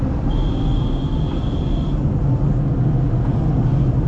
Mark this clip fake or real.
real